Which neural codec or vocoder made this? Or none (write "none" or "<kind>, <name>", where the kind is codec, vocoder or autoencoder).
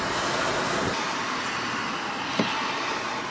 none